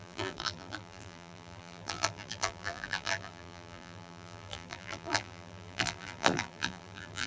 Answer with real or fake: fake